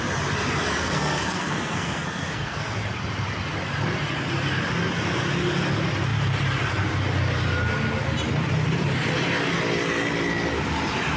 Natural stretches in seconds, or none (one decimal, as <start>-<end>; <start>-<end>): 0.0-0.8; 2.7-11.2